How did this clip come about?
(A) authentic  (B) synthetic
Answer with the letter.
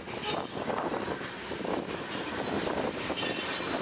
A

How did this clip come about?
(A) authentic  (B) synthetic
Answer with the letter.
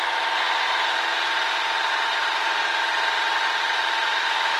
A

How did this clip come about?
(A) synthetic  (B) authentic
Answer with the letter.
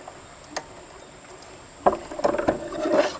B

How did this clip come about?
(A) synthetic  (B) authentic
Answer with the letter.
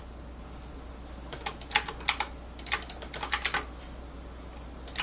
B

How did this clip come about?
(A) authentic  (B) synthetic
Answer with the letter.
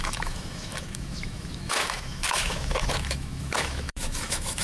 B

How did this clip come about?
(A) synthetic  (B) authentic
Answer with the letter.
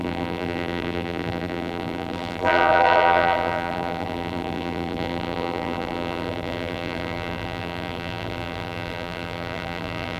A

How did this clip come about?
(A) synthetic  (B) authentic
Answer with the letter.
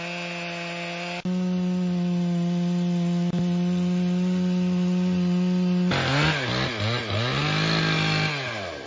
B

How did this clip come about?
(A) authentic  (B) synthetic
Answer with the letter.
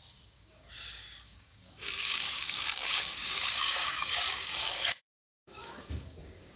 B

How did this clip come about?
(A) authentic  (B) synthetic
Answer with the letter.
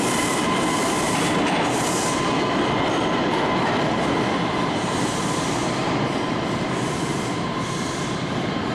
B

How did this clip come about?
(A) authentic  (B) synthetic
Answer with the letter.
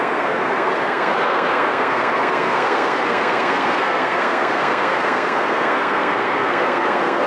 B